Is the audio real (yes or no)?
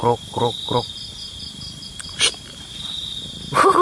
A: no